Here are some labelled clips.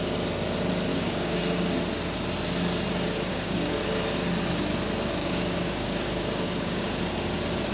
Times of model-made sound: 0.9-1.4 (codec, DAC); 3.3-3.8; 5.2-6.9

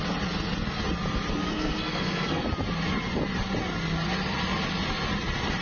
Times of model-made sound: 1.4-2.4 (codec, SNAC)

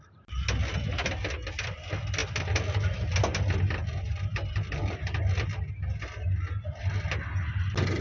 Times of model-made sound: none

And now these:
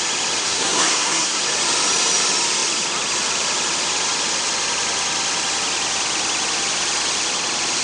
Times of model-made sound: 0.4-1.4 (codec, SNAC)